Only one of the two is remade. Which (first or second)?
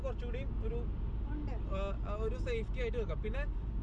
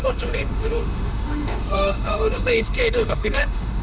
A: second